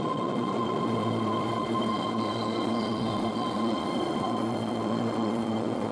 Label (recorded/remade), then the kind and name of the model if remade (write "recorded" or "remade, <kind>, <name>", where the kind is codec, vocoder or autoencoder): remade, vocoder, Vocos